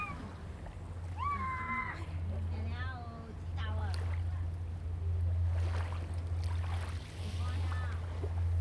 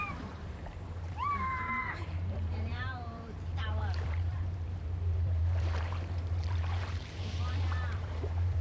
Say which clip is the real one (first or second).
first